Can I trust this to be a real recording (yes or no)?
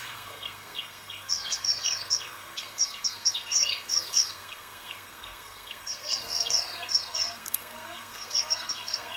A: no